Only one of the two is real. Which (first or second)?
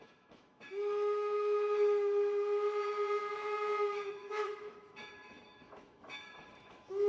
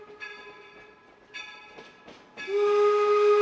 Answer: second